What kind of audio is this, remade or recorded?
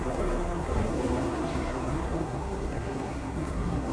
remade